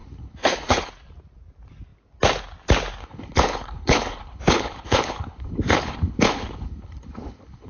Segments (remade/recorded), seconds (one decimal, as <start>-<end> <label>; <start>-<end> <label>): 0.0-0.9 remade; 0.9-3.0 recorded; 3.0-7.7 remade